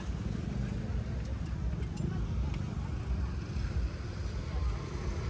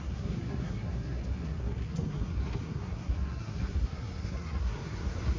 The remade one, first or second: second